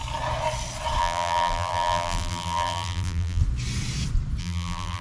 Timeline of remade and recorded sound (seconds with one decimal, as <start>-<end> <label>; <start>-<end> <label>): 0.0-1.0 recorded; 1.0-3.4 remade; 3.4-4.4 recorded; 4.4-5.0 remade